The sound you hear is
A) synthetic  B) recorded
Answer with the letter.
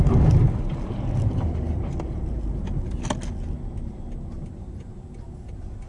B